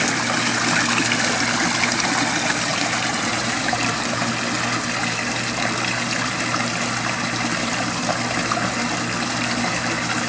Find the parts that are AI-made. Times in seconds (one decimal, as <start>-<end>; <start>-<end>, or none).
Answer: 2.7-4.3; 7.5-8.0